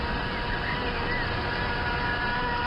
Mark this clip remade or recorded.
recorded